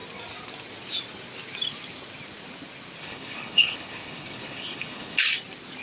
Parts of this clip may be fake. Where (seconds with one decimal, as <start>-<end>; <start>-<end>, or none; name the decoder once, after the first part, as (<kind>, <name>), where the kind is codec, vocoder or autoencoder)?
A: 3.0-5.2 (codec, HILCodec)